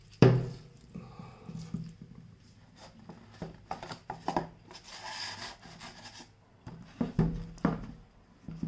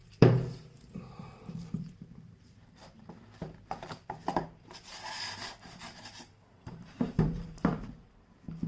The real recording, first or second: first